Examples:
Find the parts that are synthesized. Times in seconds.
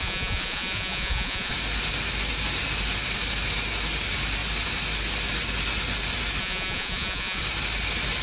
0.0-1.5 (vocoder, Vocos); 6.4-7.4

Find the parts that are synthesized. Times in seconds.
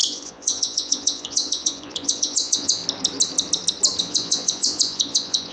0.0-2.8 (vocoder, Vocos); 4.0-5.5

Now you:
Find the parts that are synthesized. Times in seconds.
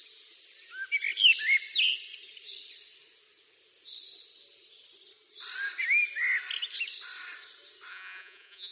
7.9-8.7 (vocoder, Vocos)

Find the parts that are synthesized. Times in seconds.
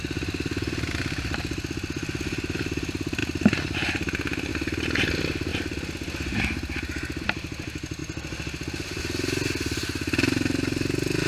none